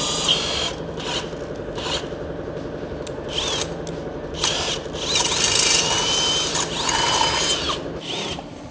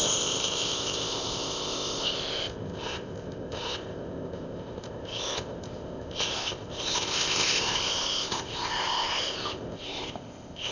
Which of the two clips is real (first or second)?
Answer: first